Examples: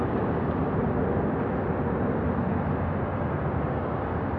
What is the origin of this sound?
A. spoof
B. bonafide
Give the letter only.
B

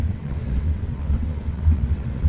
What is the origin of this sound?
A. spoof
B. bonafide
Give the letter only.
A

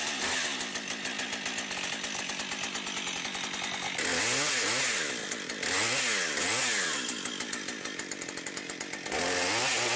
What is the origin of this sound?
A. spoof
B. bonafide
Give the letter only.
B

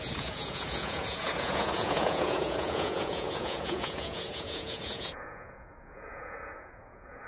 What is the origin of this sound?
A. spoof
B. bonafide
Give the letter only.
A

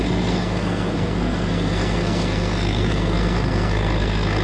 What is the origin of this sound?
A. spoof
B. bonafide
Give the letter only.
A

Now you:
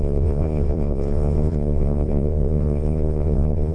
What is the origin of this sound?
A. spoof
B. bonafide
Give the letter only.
A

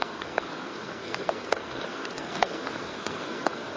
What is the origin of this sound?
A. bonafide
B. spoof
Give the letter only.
B